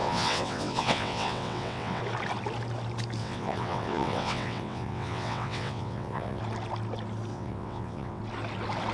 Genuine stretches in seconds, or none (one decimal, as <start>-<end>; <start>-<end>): 2.0-3.2; 6.4-7.3; 8.2-8.9